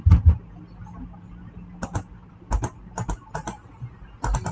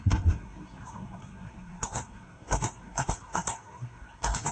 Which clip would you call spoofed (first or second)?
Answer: second